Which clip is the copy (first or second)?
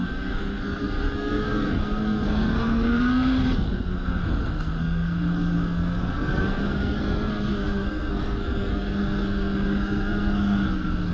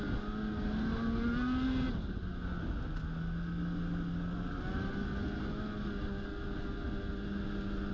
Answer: first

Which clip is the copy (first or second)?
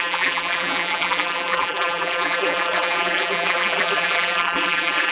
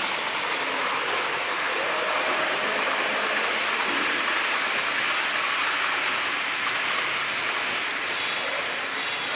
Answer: first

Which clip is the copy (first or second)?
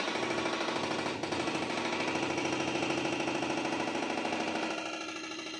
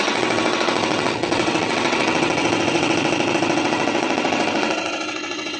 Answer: second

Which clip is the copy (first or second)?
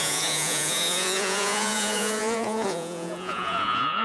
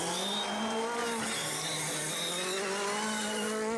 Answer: first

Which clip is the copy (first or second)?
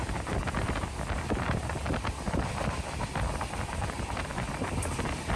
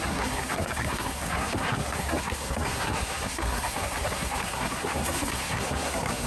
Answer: second